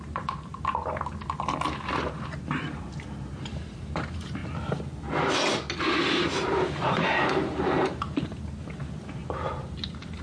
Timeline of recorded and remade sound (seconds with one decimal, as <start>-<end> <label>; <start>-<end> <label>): 0.0-0.5 remade; 0.5-2.1 recorded; 2.1-4.4 remade; 4.4-6.1 recorded; 6.1-10.2 remade